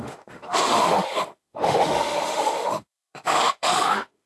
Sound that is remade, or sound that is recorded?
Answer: remade